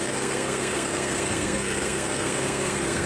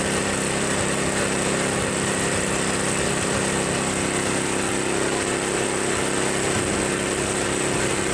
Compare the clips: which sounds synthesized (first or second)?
first